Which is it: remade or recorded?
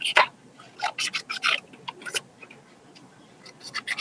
recorded